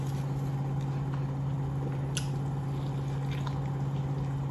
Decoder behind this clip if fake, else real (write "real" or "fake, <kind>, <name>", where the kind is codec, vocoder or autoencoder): real